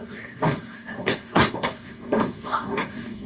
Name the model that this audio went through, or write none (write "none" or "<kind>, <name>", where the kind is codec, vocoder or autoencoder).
codec, SNAC